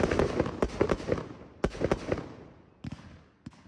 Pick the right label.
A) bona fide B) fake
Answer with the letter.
A